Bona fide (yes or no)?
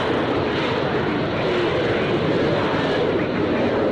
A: yes